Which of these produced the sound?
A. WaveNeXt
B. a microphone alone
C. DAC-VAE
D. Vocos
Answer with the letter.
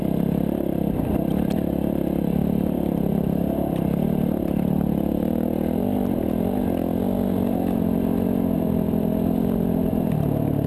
B